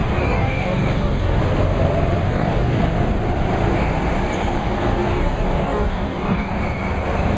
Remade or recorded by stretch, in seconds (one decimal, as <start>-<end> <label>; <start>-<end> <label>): 0.0-1.4 remade; 1.4-2.2 recorded; 2.2-2.8 remade; 2.8-4.6 recorded; 4.6-6.5 remade; 6.5-7.4 recorded